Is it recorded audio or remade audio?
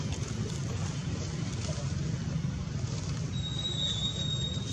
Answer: recorded